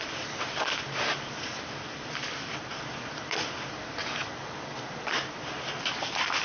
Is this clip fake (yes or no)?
yes